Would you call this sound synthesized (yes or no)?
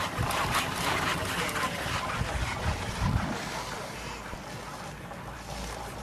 no